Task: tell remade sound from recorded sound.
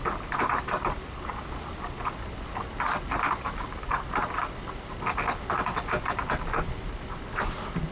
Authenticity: recorded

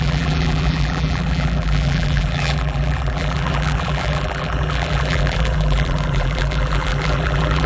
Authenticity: remade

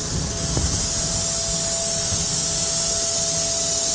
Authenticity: recorded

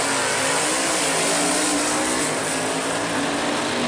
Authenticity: recorded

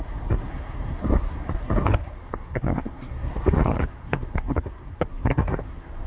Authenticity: remade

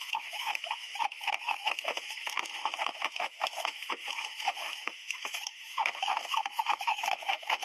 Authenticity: remade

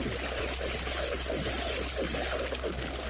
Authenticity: recorded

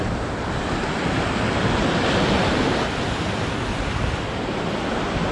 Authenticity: recorded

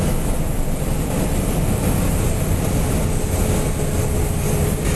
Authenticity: recorded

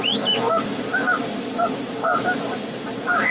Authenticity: recorded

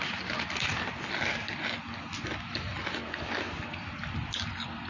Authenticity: recorded